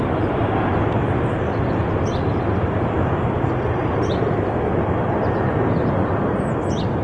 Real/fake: real